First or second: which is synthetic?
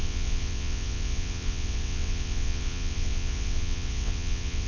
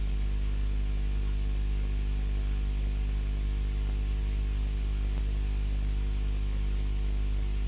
first